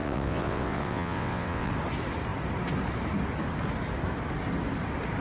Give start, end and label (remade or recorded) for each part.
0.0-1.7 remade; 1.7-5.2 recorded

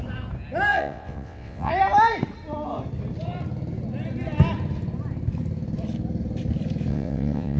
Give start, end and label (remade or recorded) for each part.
0.0-0.7 recorded; 0.7-1.7 remade; 1.7-6.9 recorded; 6.9-7.6 remade

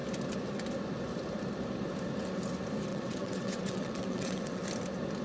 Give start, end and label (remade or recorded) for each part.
0.0-2.9 recorded; 2.9-4.6 remade; 4.6-5.2 recorded

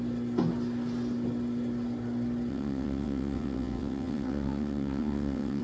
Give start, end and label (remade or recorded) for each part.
0.0-2.5 recorded; 2.5-5.6 remade

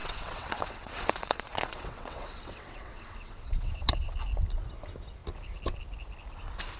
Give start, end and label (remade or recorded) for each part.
0.0-4.1 remade; 4.1-6.8 recorded

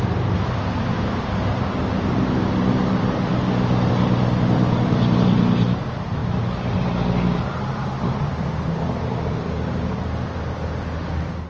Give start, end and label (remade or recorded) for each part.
0.0-11.5 recorded

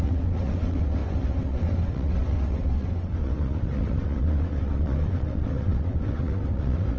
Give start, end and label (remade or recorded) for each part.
0.0-7.0 remade